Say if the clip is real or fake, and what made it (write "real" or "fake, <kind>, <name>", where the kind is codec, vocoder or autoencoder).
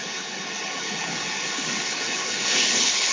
fake, codec, HILCodec